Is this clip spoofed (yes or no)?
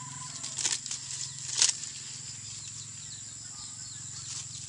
no